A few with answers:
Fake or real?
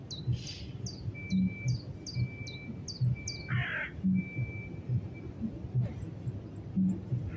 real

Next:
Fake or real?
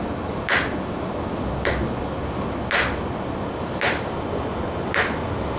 real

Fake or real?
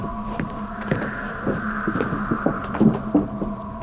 fake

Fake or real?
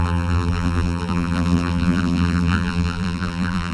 fake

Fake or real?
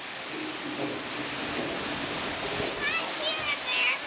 real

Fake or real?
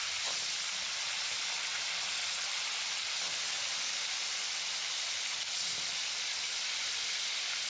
fake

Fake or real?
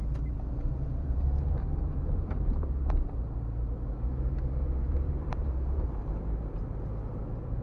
fake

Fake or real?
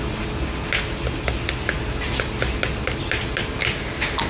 real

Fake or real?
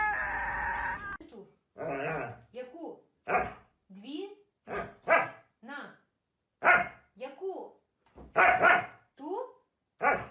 real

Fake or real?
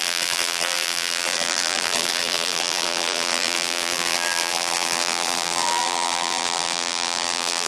fake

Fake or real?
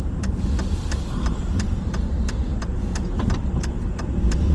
fake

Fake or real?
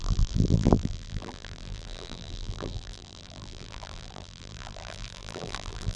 fake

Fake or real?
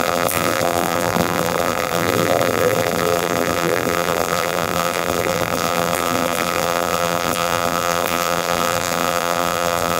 fake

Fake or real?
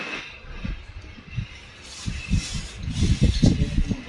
real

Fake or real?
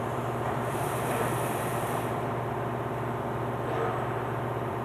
fake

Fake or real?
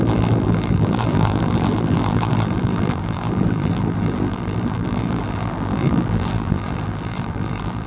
fake